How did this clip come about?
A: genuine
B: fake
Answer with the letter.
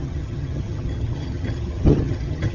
B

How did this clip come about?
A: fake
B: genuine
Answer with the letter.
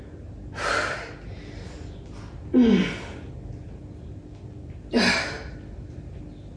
B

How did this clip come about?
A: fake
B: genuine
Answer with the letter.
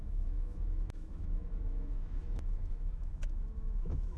A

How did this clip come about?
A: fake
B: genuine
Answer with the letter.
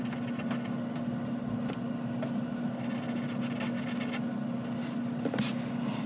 B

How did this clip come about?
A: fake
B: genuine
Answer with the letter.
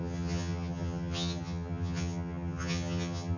A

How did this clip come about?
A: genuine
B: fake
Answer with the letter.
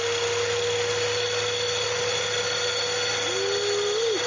A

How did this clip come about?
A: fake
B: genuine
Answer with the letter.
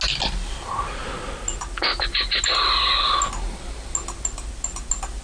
B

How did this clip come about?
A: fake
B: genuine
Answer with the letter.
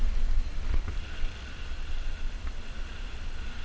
B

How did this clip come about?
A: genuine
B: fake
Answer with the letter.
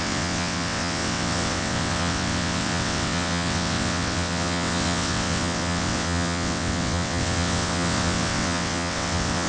B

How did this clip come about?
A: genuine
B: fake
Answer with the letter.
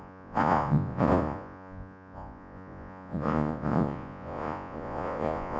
B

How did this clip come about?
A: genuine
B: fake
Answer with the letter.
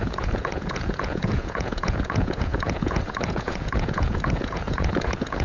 B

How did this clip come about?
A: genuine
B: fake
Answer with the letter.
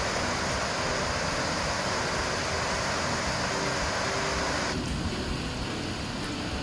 A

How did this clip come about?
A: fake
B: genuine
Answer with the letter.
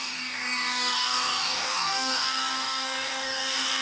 A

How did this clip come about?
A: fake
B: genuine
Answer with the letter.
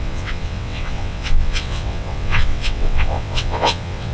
A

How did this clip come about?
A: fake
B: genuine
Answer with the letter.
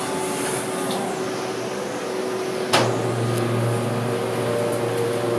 B